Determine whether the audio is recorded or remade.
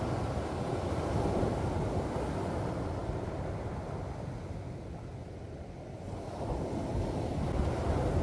recorded